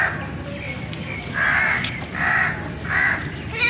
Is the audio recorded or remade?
recorded